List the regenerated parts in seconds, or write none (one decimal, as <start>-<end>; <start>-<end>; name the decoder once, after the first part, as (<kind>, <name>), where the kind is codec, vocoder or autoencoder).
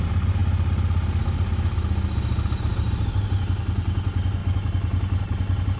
none